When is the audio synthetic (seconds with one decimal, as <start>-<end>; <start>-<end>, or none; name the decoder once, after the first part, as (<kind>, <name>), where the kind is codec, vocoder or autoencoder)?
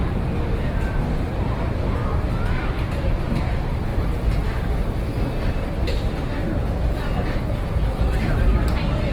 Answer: 0.0-2.0 (vocoder, BigVGAN v2); 3.1-3.9; 5.6-6.3; 8.0-9.1